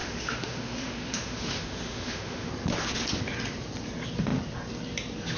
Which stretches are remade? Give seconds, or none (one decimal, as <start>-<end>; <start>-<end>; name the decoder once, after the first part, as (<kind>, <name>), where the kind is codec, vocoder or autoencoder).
0.0-2.5 (autoencoder, DAC-VAE)